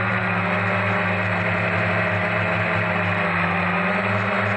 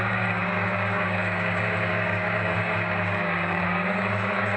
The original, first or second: first